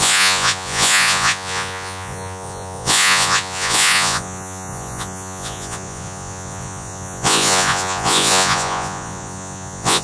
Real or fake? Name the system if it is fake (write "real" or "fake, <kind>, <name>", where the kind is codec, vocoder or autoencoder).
fake, vocoder, Vocos